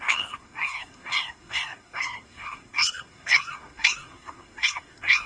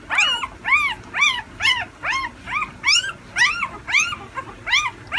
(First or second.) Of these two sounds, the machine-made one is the first